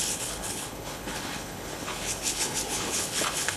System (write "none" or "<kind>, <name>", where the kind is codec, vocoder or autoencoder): codec, HILCodec